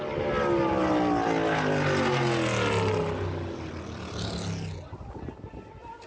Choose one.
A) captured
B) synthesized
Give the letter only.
A